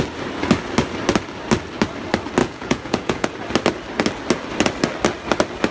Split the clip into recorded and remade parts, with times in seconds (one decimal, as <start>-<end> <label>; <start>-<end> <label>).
0.0-2.4 recorded; 2.4-3.3 remade; 3.3-5.7 recorded